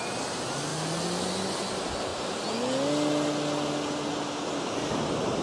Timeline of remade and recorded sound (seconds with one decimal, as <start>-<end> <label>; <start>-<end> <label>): 0.0-0.7 remade; 0.7-1.7 recorded; 1.7-2.1 remade; 2.1-4.6 recorded; 4.6-5.4 remade